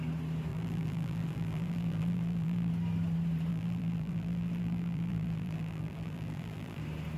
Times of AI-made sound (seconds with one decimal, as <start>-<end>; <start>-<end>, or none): 0.5-2.7; 3.5-6.8